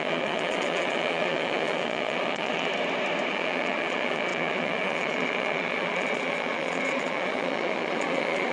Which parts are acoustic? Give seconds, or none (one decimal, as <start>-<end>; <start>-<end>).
2.7-3.3